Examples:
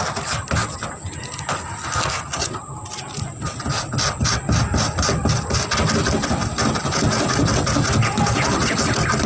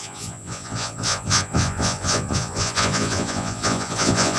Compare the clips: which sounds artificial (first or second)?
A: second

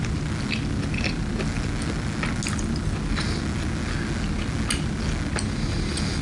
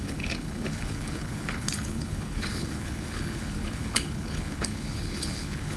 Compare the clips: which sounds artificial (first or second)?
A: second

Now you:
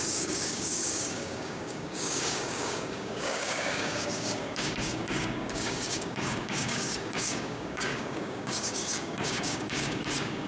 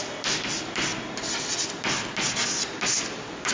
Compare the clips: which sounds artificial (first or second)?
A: first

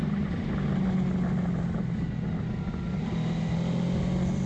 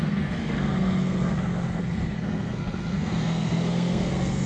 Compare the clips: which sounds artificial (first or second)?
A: second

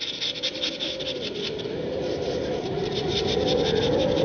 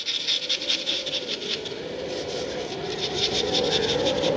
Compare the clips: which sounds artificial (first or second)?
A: first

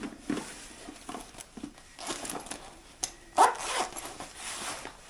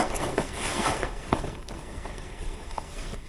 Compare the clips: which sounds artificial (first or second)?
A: second